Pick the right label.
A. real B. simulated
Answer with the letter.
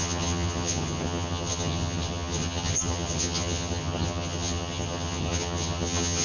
B